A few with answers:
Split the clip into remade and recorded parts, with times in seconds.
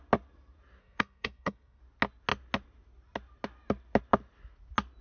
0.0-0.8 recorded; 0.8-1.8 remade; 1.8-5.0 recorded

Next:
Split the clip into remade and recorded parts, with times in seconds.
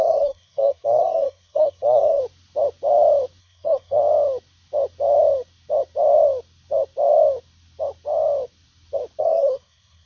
0.0-2.2 remade; 2.2-3.4 recorded; 3.4-4.0 remade; 4.0-9.2 recorded; 9.2-10.1 remade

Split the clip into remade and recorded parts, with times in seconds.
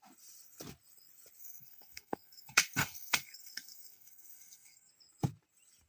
0.0-1.4 recorded; 1.4-4.9 remade; 4.9-5.9 recorded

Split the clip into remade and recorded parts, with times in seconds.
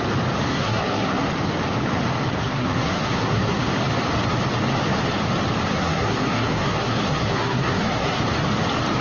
0.0-0.5 recorded; 0.5-1.3 remade; 1.3-2.4 recorded; 2.4-3.7 remade; 3.7-5.7 recorded; 5.7-8.2 remade; 8.2-9.0 recorded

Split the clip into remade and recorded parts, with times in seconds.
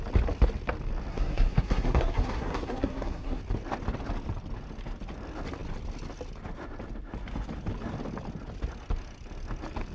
0.0-1.1 recorded; 1.1-3.4 remade; 3.4-9.9 recorded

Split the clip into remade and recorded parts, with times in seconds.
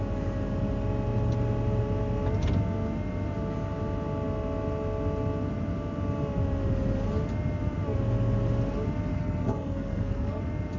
0.0-9.1 recorded; 9.1-10.4 remade; 10.4-10.8 recorded